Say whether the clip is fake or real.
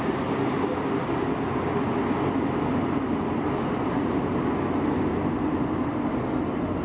real